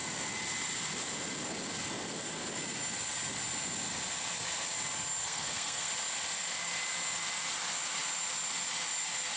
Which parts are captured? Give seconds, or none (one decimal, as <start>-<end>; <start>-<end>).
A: 0.0-5.2; 5.9-9.4